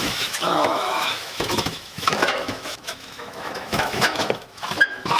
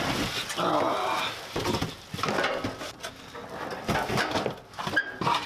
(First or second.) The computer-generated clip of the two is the first